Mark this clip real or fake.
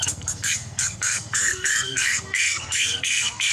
fake